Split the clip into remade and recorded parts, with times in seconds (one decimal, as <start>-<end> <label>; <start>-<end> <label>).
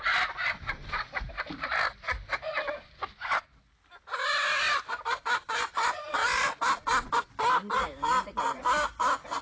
0.0-0.8 recorded; 0.8-2.5 remade; 2.5-9.4 recorded